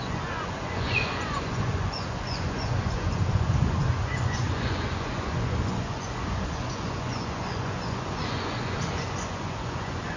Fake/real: fake